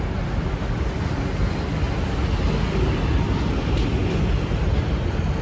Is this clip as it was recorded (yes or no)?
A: yes